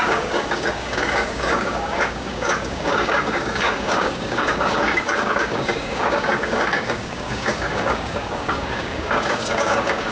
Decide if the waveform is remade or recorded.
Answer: remade